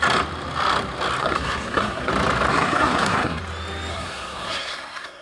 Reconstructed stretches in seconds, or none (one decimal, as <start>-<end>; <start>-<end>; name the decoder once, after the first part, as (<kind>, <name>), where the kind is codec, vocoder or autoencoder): 1.2-2.1 (codec, SNAC); 2.5-3.4; 3.9-5.2